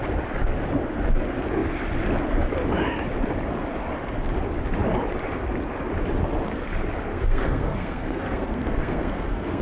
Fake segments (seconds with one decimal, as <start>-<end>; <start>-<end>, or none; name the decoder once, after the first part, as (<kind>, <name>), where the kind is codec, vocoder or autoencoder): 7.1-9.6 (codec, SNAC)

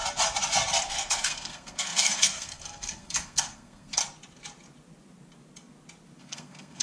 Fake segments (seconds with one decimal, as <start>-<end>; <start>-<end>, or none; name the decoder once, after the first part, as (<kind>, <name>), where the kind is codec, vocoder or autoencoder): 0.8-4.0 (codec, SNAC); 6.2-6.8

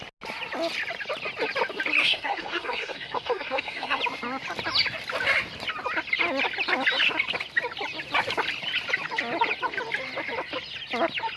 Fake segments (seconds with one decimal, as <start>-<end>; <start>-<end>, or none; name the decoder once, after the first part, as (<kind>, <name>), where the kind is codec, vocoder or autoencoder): 2.0-4.0 (codec, SNAC)